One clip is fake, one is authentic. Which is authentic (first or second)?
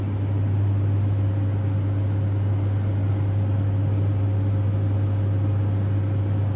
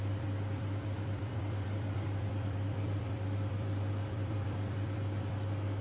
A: first